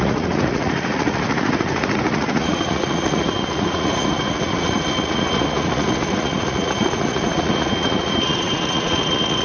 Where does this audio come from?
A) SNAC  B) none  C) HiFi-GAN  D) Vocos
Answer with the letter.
D